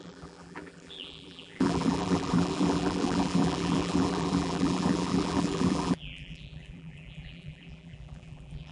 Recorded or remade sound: remade